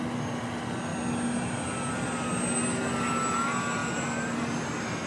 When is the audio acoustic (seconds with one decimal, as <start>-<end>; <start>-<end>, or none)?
0.0-3.8